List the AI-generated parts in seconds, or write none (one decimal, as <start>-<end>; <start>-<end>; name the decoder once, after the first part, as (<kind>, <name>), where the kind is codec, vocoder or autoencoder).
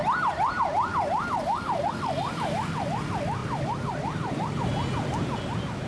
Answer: none